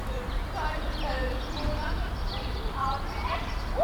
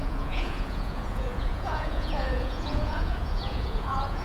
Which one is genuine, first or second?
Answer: first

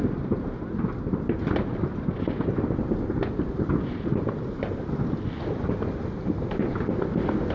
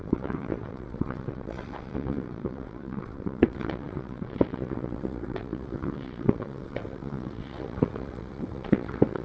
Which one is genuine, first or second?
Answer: first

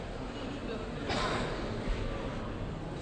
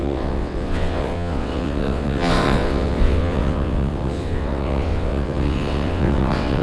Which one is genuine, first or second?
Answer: first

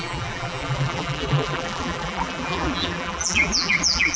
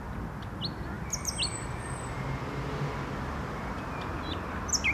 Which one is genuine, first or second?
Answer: second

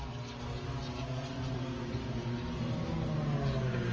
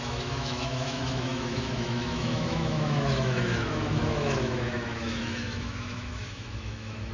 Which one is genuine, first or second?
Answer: first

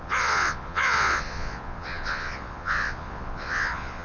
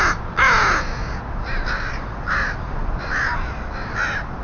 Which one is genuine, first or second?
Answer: second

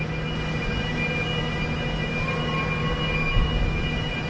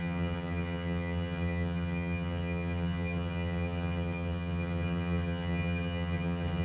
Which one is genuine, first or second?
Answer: first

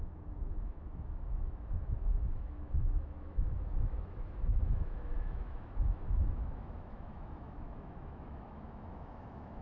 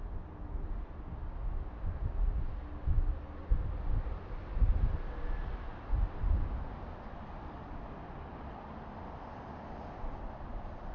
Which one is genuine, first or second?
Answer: second